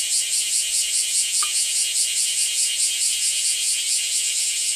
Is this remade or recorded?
remade